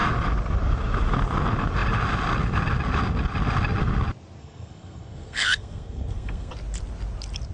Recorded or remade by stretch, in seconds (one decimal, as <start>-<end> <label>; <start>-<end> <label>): 0.0-4.4 recorded; 4.4-6.5 remade; 6.5-7.5 recorded

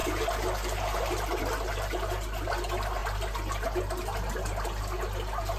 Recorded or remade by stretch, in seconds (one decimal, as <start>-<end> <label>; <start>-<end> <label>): 0.0-5.6 recorded

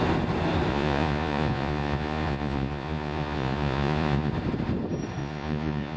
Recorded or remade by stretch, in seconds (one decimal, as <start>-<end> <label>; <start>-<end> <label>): 0.0-0.7 recorded; 0.7-4.3 remade; 4.3-5.2 recorded; 5.2-6.0 remade